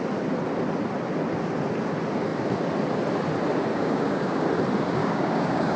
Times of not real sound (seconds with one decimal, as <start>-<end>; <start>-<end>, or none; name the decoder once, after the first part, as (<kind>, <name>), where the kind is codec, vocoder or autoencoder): 3.7-4.4 (codec, DAC); 5.0-5.8